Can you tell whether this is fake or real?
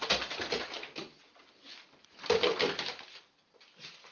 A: real